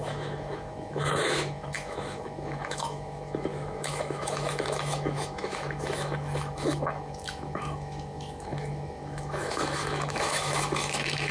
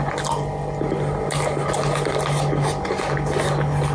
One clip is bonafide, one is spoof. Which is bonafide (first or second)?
second